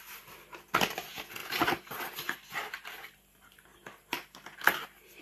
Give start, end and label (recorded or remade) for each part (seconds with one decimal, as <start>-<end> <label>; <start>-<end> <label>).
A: 0.0-5.2 recorded